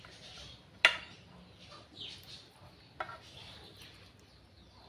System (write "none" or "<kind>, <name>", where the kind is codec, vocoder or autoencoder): none